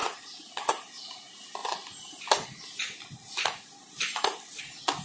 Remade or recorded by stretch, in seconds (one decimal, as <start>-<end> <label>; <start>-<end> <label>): 0.0-0.5 remade; 0.5-5.0 recorded